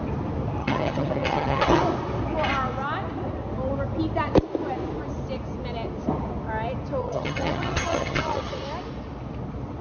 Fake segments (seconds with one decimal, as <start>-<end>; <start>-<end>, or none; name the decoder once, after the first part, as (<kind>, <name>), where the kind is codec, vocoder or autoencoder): 0.6-1.8 (vocoder, HiFi-GAN); 7.0-8.5